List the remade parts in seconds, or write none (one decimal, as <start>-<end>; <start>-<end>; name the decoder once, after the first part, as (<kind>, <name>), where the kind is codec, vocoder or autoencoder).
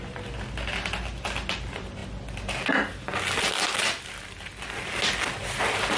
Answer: none